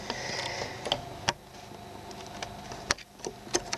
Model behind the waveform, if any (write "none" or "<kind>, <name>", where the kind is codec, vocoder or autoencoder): none